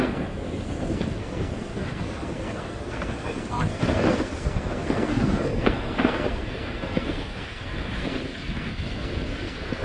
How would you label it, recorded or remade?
remade